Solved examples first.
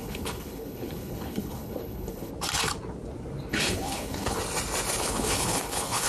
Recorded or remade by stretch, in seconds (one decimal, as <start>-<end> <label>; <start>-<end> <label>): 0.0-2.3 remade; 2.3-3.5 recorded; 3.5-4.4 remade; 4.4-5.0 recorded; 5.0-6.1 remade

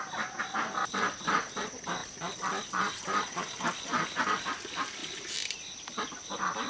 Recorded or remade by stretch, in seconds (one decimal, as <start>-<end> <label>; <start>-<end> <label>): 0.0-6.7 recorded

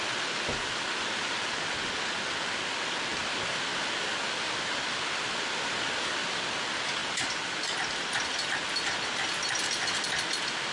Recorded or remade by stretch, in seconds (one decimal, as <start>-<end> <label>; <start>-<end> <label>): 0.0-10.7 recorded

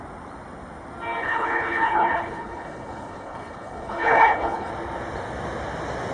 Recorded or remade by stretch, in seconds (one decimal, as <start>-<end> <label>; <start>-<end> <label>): 0.0-1.2 recorded; 1.2-4.7 remade; 4.7-6.1 recorded

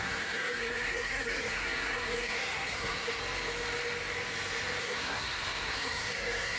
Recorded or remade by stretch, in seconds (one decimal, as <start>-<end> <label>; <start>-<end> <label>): 0.0-3.2 remade; 3.2-4.8 recorded; 4.8-6.6 remade